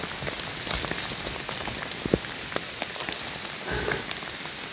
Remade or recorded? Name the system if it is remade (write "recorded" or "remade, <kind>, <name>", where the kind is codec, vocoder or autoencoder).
recorded